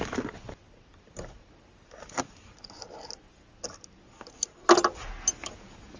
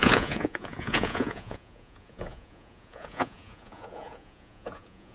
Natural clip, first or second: first